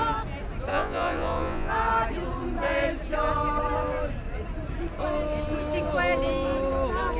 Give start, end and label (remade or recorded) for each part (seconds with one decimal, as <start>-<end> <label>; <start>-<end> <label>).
0.0-0.7 recorded; 0.7-1.7 remade; 1.7-7.2 recorded